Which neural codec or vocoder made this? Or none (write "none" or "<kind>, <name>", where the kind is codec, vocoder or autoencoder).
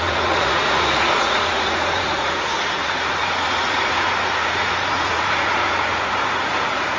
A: vocoder, Vocos